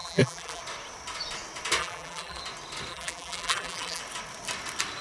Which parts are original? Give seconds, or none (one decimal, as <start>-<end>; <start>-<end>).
0.6-1.8; 2.4-2.9; 4.0-5.0